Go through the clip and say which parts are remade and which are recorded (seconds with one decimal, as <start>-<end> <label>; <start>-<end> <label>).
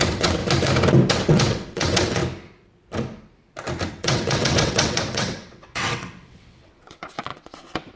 0.0-0.4 remade; 0.4-1.1 recorded; 1.1-2.2 remade; 2.2-3.9 recorded; 3.9-8.0 remade